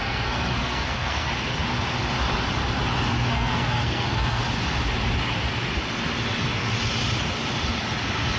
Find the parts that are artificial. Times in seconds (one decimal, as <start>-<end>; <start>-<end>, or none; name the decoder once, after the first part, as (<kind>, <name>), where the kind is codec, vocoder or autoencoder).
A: 0.0-1.3 (codec, SNAC); 3.3-4.4